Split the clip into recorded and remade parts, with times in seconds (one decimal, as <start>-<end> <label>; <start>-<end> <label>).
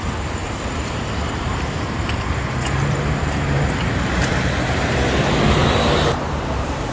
0.0-4.3 remade; 4.3-5.5 recorded; 5.5-6.9 remade